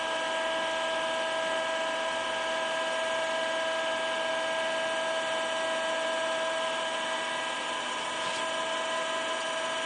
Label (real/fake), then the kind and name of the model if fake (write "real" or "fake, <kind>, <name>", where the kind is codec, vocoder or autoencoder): real